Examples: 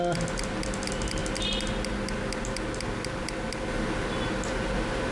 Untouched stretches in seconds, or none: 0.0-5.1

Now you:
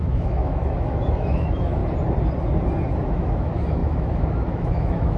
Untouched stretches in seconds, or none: 1.8-3.1